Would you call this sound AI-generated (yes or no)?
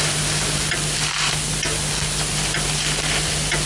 no